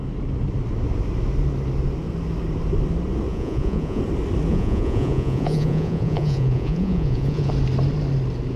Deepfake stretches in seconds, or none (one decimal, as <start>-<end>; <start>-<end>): 3.3-4.0; 4.5-7.5